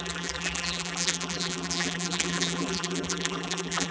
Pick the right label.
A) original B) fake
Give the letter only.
B